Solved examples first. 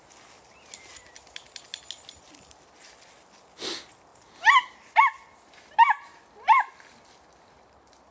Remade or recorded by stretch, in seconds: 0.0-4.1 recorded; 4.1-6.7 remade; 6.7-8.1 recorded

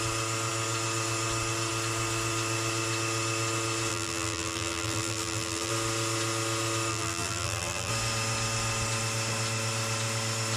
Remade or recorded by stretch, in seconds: 0.0-3.9 recorded; 3.9-5.7 remade; 5.7-6.9 recorded; 6.9-7.9 remade; 7.9-10.6 recorded

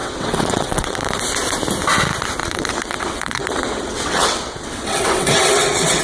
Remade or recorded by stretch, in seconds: 0.0-1.0 remade; 1.0-2.4 recorded; 2.4-6.0 remade